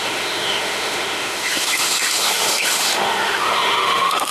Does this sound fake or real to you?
fake